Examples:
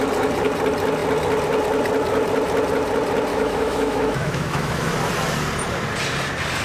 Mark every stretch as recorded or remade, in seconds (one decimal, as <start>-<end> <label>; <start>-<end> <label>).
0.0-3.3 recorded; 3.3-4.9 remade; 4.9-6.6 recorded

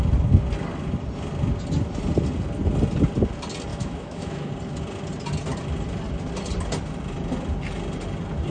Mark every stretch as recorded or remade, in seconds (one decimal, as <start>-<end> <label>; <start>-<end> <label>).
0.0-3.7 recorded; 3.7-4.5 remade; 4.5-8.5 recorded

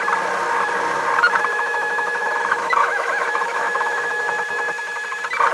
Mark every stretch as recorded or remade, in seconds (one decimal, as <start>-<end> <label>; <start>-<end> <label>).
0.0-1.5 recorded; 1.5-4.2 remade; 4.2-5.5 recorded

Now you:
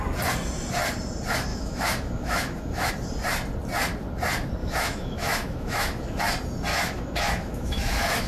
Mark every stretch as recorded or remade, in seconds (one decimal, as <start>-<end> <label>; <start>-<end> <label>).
0.0-1.5 recorded; 1.5-2.9 remade; 2.9-4.6 recorded; 4.6-6.2 remade; 6.2-6.7 recorded; 6.7-8.3 remade

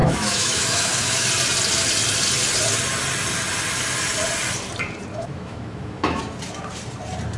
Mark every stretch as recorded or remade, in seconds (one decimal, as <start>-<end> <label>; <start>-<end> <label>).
0.0-1.3 remade; 1.3-5.1 recorded; 5.1-6.2 remade; 6.2-7.4 recorded